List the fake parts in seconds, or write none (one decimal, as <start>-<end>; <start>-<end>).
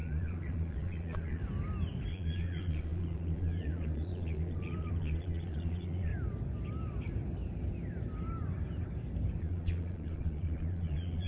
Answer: 0.0-1.4; 2.1-6.1; 9.4-11.3